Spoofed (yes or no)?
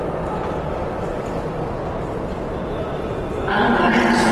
no